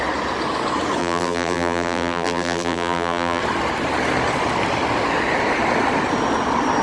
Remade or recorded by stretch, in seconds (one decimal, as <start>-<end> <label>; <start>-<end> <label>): 0.0-1.0 recorded; 1.0-3.4 remade; 3.4-6.8 recorded